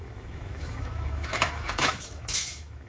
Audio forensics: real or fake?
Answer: fake